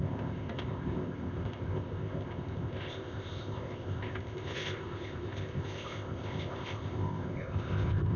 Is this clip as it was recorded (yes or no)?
no